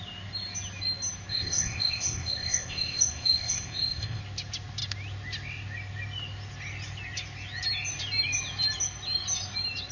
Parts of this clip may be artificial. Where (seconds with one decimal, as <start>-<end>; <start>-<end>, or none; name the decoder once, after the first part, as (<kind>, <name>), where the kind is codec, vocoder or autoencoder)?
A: 1.3-4.2 (codec, ZipCodec)